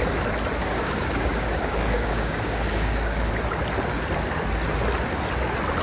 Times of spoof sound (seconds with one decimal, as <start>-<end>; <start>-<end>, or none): 0.6-3.3